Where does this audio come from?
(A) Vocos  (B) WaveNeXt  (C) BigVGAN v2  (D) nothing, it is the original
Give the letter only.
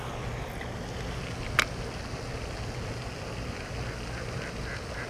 D